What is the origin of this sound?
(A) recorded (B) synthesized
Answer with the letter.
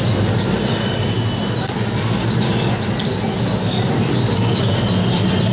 A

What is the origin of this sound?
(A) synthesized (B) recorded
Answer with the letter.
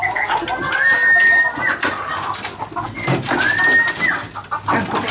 B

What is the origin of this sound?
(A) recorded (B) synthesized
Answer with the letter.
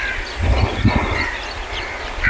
A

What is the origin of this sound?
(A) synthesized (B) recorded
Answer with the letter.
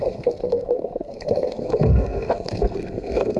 A